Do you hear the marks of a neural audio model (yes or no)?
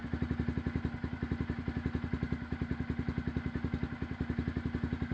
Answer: no